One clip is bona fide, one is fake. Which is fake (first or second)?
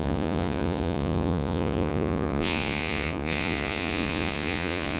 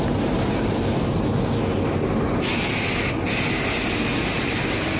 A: first